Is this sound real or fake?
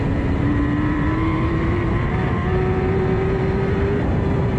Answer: fake